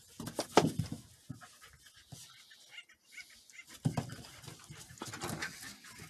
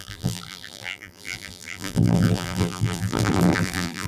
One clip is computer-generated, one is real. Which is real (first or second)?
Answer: first